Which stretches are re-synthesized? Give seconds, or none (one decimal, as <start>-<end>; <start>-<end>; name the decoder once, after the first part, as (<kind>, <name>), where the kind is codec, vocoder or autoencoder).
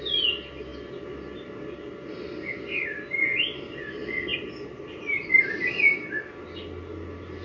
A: none